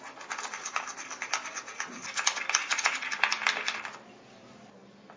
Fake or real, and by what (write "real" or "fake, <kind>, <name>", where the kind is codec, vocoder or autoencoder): real